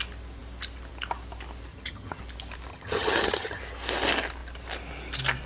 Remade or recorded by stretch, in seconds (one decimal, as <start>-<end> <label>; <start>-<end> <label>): 0.0-1.7 recorded; 1.7-2.2 remade; 2.2-2.7 recorded; 2.7-3.6 remade; 3.6-5.5 recorded